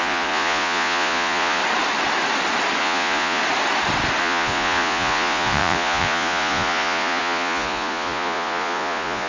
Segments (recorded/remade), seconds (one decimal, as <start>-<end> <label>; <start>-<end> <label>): 0.0-1.6 remade; 1.6-2.8 recorded; 2.8-3.4 remade; 3.4-4.2 recorded; 4.2-9.3 remade